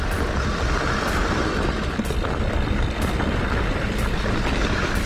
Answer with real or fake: fake